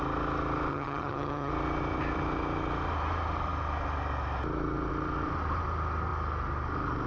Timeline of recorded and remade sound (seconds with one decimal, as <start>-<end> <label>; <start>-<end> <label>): 0.0-0.7 recorded; 0.7-1.5 remade; 1.5-7.1 recorded